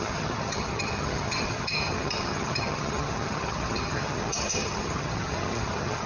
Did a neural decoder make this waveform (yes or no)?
yes